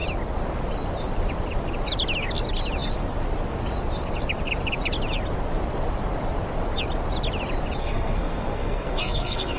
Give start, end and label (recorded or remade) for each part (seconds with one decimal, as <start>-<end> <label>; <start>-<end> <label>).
0.0-7.8 recorded; 7.8-9.6 remade